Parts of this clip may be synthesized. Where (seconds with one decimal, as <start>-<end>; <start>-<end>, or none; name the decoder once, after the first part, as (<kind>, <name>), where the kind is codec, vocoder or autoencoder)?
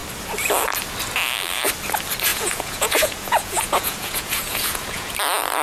2.3-5.1 (vocoder, Vocos)